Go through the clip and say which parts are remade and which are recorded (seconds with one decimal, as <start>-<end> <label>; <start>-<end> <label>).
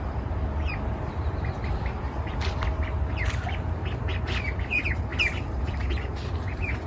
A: 0.0-6.9 recorded